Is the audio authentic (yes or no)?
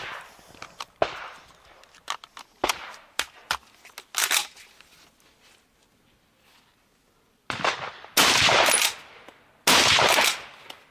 yes